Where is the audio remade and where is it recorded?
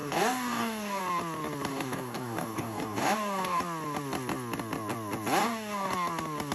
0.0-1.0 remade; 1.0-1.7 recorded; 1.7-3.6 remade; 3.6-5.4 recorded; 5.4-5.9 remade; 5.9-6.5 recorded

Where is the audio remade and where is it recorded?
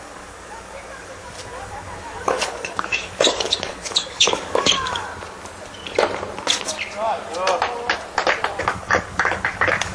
0.0-5.1 remade; 5.1-8.6 recorded; 8.6-9.9 remade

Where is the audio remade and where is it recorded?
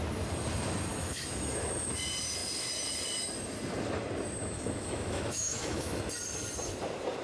0.0-0.9 recorded; 0.9-1.9 remade; 1.9-4.4 recorded; 4.4-6.0 remade; 6.0-7.2 recorded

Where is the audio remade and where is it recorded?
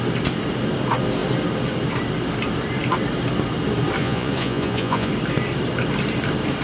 0.0-4.0 recorded; 4.0-5.1 remade; 5.1-6.6 recorded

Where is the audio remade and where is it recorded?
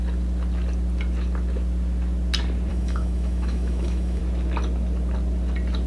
0.0-2.7 recorded; 2.7-4.2 remade; 4.2-5.9 recorded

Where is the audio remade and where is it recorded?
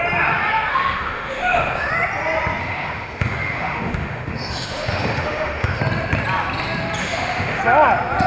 0.0-0.7 recorded; 0.7-1.9 remade; 1.9-2.6 recorded; 2.6-5.8 remade; 5.8-7.0 recorded; 7.0-7.6 remade; 7.6-8.3 recorded